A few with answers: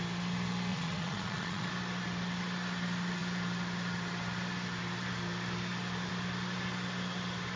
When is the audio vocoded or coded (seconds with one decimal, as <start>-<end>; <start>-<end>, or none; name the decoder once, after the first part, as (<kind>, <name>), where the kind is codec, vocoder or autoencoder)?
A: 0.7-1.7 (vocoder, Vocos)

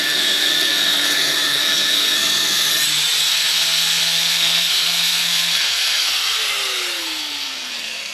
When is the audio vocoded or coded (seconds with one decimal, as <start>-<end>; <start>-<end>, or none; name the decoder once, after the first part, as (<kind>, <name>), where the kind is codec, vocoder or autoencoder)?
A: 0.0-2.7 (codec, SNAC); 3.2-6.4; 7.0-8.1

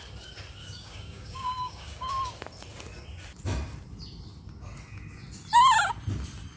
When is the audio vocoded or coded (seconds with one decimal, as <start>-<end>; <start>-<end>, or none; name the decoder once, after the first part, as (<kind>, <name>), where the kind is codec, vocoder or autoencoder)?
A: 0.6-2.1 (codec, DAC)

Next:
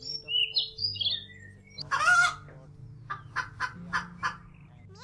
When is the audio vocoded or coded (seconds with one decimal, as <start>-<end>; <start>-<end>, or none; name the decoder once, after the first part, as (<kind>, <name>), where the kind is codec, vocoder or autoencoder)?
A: none

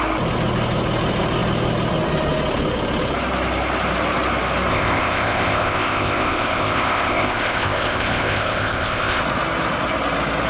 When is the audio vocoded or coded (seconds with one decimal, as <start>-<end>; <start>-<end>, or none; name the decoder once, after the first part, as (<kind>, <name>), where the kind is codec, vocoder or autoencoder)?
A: 4.7-9.2 (codec, ZipCodec)

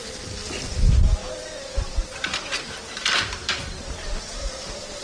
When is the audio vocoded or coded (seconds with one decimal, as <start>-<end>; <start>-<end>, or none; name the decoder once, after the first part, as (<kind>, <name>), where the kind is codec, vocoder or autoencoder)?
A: none

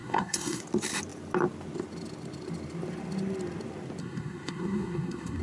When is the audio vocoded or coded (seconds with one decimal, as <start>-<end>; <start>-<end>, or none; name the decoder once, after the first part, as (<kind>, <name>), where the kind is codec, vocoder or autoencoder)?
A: 0.0-0.6 (codec, SNAC); 4.0-5.4

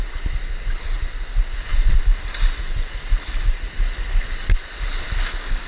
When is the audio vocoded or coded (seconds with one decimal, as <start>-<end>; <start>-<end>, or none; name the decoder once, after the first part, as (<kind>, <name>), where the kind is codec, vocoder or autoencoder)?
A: none